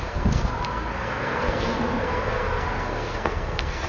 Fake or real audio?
fake